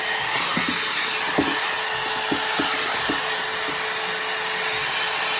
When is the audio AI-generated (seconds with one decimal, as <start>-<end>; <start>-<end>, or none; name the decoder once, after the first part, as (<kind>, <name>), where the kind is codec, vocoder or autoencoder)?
none